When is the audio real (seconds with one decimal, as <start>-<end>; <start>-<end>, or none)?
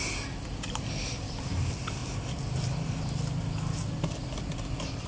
0.0-5.1